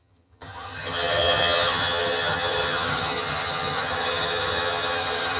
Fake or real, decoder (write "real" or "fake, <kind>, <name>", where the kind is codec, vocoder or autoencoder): fake, vocoder, HiFi-GAN